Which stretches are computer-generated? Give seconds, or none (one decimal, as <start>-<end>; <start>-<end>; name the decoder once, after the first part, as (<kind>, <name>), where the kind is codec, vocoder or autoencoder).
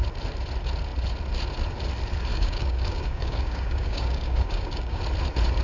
2.3-5.0 (codec, DAC)